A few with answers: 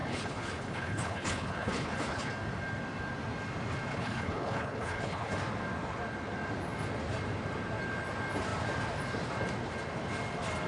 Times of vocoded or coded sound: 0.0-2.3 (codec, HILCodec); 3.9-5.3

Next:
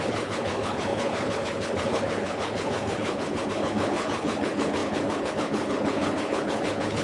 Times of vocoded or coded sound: 0.0-7.0 (codec, HILCodec)

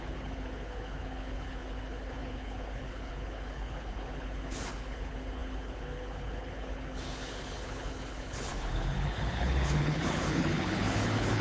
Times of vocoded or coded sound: 0.0-11.4 (codec, HILCodec)

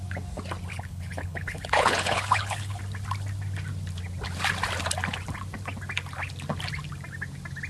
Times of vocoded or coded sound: 0.7-2.8 (codec, HILCodec)